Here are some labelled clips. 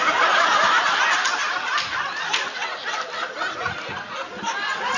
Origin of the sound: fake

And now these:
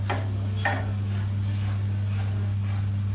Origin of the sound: real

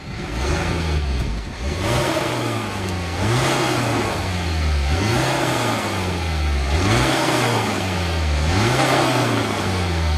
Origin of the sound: fake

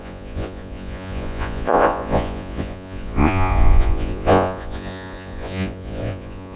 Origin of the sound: fake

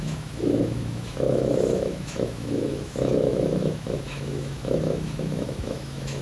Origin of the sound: fake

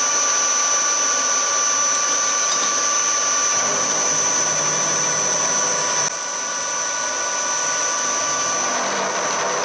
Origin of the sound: real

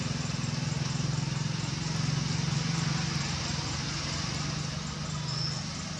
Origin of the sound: real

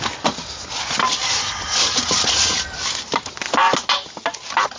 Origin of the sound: real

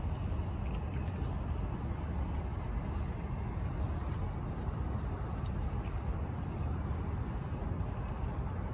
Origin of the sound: real